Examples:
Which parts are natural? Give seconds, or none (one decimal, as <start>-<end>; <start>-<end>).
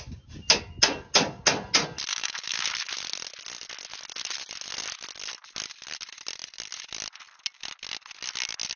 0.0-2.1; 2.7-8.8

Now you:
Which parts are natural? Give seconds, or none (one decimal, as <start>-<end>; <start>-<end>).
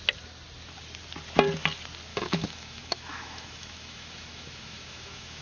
0.0-2.1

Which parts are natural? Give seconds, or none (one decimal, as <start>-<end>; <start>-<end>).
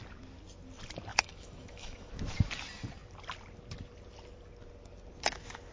0.0-1.1; 2.1-5.7